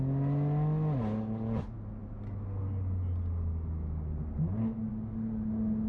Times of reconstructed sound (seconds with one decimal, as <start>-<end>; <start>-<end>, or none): none

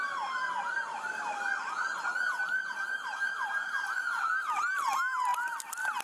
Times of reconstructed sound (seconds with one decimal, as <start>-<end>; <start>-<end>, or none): none

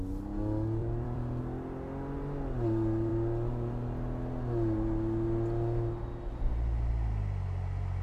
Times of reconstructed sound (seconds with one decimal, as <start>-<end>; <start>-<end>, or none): 0.8-1.4

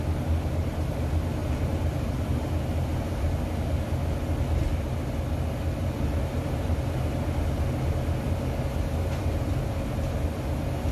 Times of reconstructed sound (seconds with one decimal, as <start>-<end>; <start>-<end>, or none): 1.4-2.5

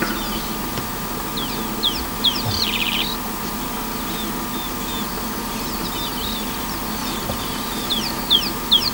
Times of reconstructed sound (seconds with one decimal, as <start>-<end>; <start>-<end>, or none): 5.4-5.9; 7.0-8.2